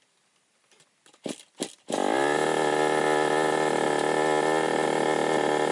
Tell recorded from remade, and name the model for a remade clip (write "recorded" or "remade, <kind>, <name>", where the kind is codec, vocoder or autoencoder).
recorded